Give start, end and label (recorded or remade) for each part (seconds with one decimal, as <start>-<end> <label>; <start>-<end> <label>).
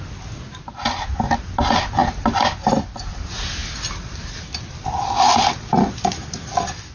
0.0-6.9 recorded